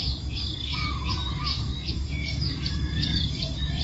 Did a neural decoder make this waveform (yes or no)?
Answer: yes